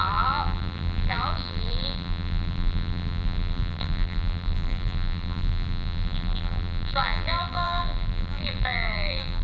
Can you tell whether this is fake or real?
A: fake